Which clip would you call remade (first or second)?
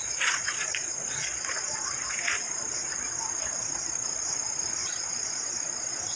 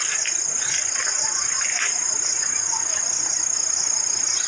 first